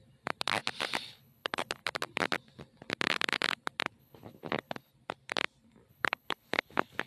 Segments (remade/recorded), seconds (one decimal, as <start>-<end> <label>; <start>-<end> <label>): 0.0-1.0 recorded; 1.0-1.8 remade; 1.8-4.0 recorded; 4.0-4.9 remade; 4.9-5.9 recorded; 5.9-7.1 remade